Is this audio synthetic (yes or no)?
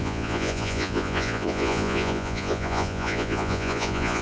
yes